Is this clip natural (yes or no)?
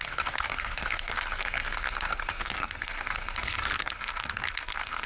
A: no